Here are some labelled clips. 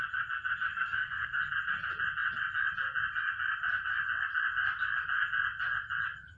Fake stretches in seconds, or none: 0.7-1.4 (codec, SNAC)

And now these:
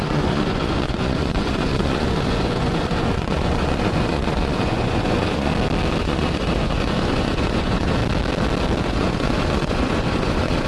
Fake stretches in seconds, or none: 0.0-5.5 (vocoder, Vocos); 6.0-8.0; 8.8-10.7

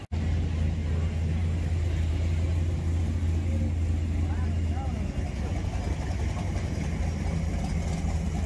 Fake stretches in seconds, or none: none

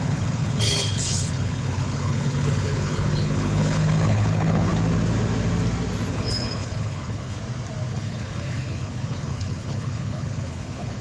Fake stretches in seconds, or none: 0.0-4.7 (codec, HILCodec); 6.1-7.4; 7.9-11.0

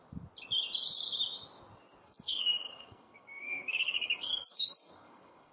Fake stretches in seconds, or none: 2.0-5.5 (codec, SNAC)

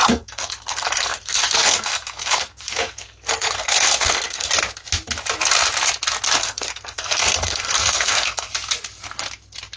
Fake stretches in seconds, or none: 0.0-4.5 (codec, SNAC); 6.4-8.5

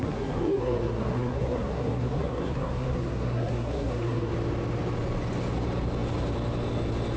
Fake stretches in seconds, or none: 0.0-4.3 (codec, SNAC)